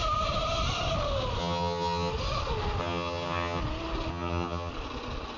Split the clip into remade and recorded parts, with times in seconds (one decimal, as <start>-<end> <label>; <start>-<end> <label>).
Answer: 0.0-1.4 recorded; 1.4-2.1 remade; 2.1-2.8 recorded; 2.8-3.6 remade; 3.6-4.1 recorded; 4.1-4.7 remade; 4.7-5.4 recorded